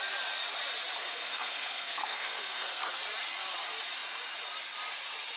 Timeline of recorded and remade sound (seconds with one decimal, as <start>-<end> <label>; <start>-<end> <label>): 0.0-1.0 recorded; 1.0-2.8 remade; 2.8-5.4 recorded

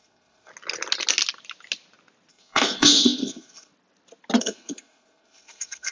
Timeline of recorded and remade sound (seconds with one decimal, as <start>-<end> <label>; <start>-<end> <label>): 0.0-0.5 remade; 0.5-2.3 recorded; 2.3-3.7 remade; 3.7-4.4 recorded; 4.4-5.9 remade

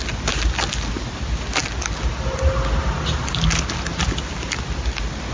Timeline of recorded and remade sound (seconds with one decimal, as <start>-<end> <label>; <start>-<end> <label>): 0.0-5.3 recorded

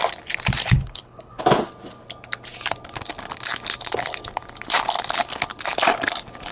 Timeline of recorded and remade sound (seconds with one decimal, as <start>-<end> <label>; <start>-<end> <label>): 0.0-0.6 recorded; 0.6-1.4 remade; 1.4-6.5 recorded